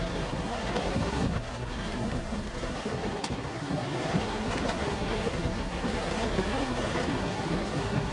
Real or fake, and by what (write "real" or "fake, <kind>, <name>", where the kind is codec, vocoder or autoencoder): fake, codec, SNAC